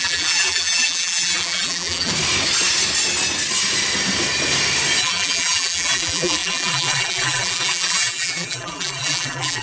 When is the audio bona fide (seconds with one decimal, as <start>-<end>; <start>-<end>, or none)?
2.1-5.0